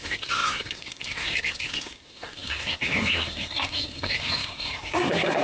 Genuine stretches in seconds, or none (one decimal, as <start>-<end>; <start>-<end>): none